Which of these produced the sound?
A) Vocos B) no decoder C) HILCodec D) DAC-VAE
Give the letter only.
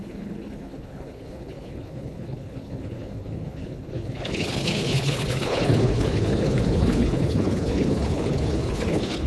C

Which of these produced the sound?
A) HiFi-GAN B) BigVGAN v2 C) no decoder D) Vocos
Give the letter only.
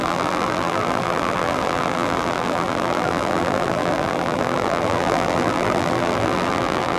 B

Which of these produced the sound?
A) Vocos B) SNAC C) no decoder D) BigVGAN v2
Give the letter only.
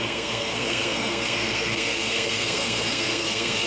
B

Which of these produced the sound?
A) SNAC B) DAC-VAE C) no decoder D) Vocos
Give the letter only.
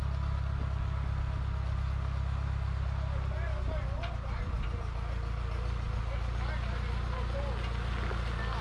C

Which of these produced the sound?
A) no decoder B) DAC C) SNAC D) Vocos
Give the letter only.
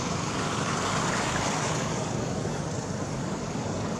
B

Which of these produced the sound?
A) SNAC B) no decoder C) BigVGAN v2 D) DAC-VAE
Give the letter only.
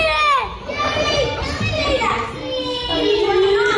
B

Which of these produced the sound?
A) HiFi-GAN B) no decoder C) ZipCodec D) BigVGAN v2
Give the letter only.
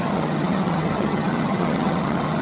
A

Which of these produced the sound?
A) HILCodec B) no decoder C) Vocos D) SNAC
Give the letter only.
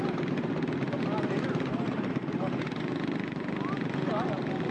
B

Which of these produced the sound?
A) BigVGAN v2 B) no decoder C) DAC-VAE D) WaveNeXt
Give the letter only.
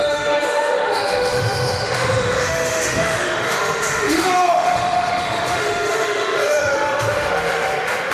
C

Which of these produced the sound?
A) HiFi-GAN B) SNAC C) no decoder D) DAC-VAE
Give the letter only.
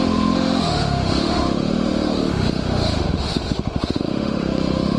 D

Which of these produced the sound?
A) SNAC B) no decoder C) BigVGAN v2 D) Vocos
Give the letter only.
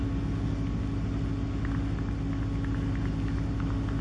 B